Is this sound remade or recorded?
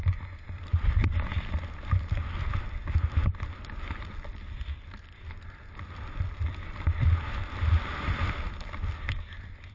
recorded